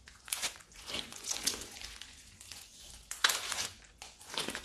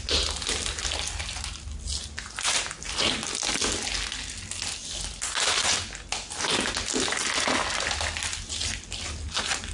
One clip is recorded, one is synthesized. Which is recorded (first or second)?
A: second